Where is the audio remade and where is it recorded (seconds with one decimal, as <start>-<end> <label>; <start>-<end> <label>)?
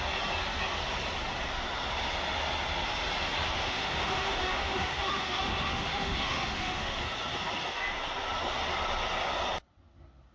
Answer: 0.0-3.6 recorded; 3.6-7.0 remade; 7.0-10.3 recorded